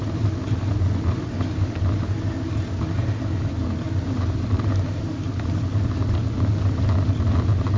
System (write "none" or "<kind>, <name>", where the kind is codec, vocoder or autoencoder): none